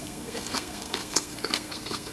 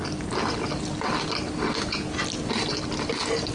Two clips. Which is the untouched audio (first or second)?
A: second